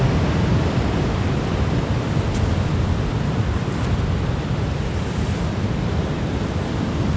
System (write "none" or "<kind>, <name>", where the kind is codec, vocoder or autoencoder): none